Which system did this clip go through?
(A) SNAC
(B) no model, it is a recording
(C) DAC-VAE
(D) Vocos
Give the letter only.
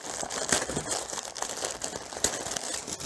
B